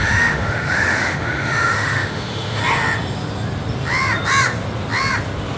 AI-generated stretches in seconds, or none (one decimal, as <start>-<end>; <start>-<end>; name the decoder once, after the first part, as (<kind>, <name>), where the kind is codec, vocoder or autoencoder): 0.0-2.6 (autoencoder, DAC-VAE)